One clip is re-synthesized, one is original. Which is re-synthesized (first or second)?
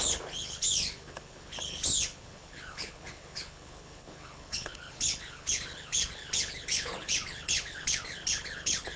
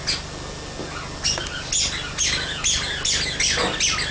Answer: first